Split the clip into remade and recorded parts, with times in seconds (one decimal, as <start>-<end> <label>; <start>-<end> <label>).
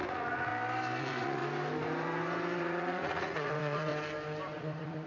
0.0-0.5 remade; 0.5-1.0 recorded; 1.0-1.4 remade; 1.4-2.6 recorded; 2.6-3.9 remade; 3.9-4.6 recorded; 4.6-5.1 remade